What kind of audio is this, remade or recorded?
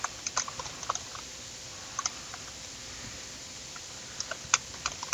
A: recorded